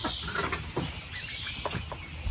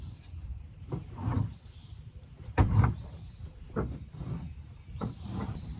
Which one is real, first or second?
first